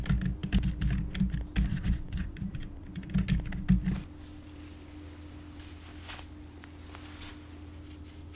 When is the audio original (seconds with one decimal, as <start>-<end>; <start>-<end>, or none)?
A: 0.0-1.7; 3.1-8.4